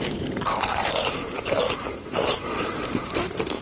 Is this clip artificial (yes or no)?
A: yes